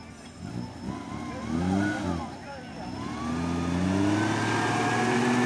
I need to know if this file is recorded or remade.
recorded